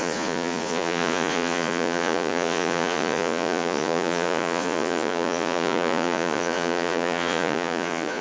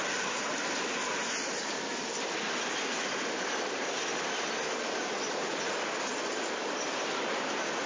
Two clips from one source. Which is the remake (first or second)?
first